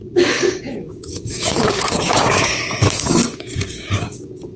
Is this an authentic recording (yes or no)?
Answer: no